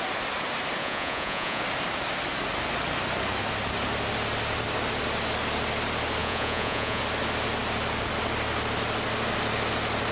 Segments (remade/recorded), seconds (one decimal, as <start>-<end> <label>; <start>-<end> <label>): 0.0-0.8 recorded; 0.8-1.6 remade; 1.6-6.2 recorded; 6.2-7.0 remade; 7.0-10.1 recorded